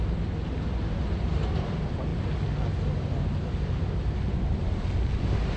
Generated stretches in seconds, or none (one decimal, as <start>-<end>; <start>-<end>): 0.0-2.1

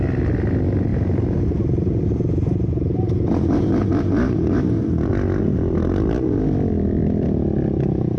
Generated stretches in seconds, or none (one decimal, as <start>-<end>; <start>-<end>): 0.9-5.1

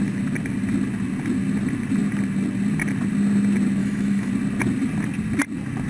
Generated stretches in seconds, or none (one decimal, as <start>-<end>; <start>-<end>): 3.8-4.3

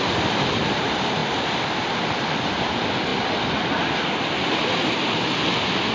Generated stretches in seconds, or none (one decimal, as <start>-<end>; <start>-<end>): none

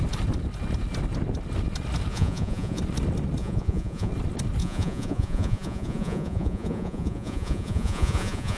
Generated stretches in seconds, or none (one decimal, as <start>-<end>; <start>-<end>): 2.1-2.8; 3.4-4.1; 4.6-8.6

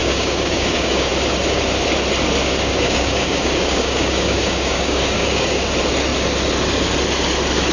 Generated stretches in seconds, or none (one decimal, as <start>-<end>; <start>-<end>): 0.0-1.1; 2.4-5.6